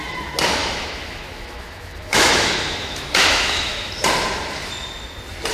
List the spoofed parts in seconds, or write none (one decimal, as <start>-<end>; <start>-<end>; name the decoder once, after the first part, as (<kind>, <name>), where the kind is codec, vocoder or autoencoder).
0.6-3.9 (autoencoder, DAC-VAE)